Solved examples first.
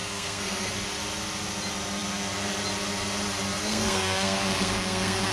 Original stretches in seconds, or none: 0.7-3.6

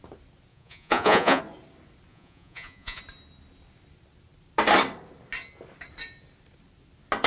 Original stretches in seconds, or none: 0.0-0.5; 1.4-2.1; 3.0-7.3